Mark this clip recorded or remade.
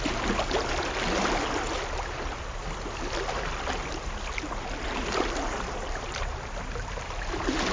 recorded